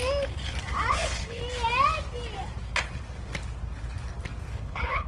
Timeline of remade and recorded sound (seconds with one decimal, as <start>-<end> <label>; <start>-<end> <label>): 0.0-0.9 recorded; 0.9-1.4 remade; 1.4-4.5 recorded; 4.5-5.1 remade